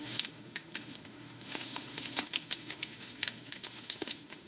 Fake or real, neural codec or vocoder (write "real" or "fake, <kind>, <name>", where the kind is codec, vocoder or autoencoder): fake, autoencoder, DAC-VAE